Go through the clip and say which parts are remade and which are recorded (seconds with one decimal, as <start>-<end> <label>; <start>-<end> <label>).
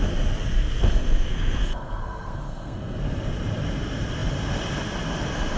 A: 0.0-0.6 recorded; 0.6-3.0 remade; 3.0-5.6 recorded